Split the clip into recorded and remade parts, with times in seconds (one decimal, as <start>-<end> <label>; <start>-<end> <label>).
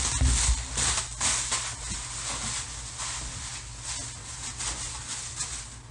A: 0.0-5.9 recorded